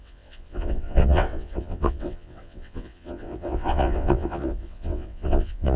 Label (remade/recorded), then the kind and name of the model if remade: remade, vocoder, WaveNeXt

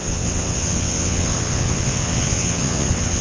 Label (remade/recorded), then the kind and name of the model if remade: remade, vocoder, WaveNeXt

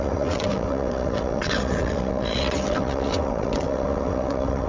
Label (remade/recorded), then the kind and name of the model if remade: remade, vocoder, WaveNeXt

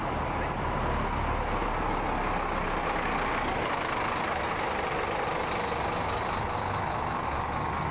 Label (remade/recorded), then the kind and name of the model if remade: recorded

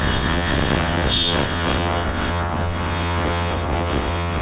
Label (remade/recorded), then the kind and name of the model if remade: remade, vocoder, WaveNeXt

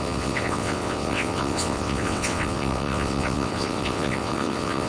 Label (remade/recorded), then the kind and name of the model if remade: remade, vocoder, WaveNeXt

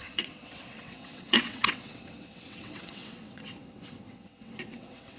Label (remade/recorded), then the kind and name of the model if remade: remade, vocoder, WaveNeXt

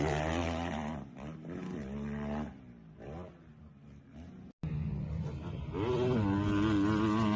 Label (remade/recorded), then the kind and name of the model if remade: recorded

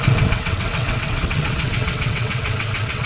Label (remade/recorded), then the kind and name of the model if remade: remade, vocoder, WaveNeXt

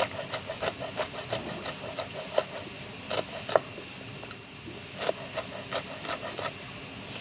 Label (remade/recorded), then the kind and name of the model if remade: recorded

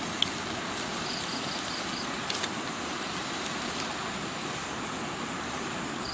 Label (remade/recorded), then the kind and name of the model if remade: recorded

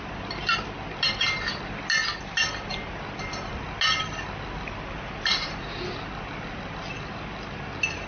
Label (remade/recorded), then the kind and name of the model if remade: recorded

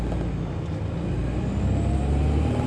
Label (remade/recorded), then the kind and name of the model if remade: recorded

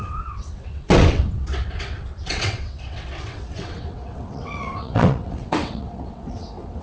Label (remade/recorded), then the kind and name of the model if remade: remade, vocoder, WaveNeXt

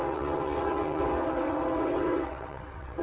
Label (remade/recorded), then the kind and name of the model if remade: remade, vocoder, WaveNeXt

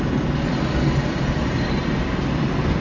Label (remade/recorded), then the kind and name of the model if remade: recorded